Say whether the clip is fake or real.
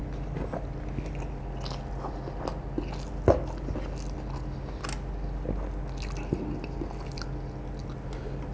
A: real